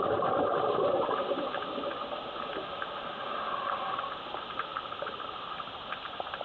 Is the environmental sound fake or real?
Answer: real